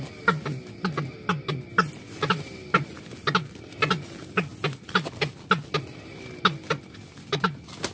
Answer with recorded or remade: recorded